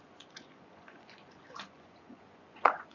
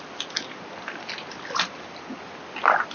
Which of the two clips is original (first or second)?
second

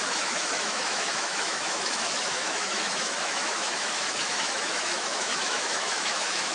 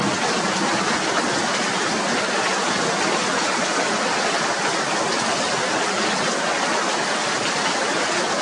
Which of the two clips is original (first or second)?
second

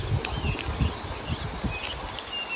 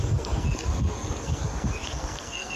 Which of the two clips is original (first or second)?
first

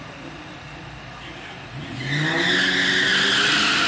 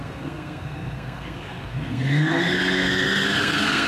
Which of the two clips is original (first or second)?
first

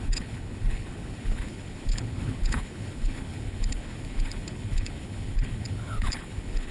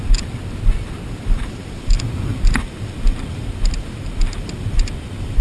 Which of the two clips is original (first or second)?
second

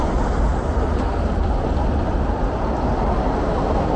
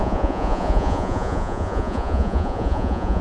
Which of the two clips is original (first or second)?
first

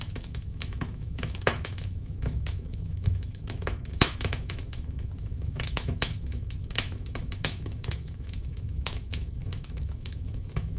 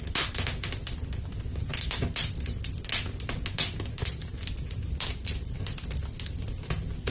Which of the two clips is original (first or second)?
second